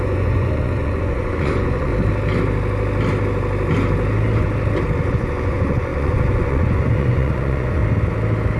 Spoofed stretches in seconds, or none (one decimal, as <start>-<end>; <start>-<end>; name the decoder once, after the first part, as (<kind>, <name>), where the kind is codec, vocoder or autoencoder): 0.0-1.9 (vocoder, Vocos); 5.1-7.8